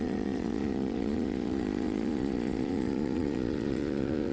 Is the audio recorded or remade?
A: remade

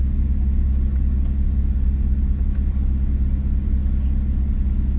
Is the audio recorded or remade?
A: recorded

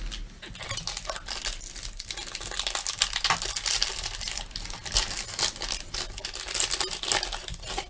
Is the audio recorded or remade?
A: recorded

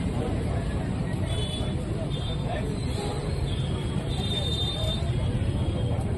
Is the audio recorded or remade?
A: remade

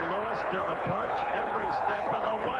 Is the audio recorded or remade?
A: remade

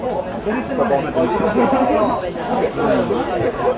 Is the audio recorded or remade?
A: recorded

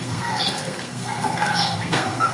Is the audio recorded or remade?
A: remade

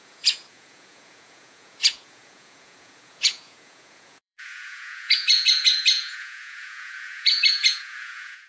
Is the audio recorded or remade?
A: remade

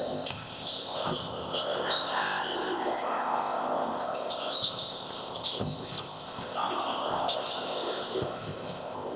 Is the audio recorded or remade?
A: remade